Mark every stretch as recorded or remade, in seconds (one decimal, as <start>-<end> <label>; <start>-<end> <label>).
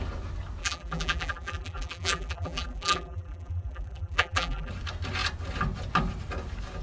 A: 0.0-0.6 recorded; 0.6-4.7 remade; 4.7-6.8 recorded